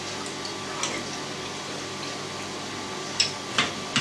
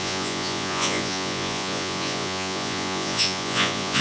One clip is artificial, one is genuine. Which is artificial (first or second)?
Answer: second